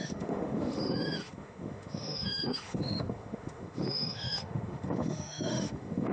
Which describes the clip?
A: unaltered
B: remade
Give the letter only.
B